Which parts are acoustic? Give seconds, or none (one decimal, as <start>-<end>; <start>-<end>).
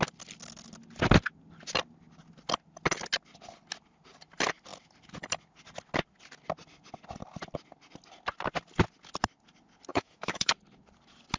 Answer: 0.0-9.9; 10.5-11.4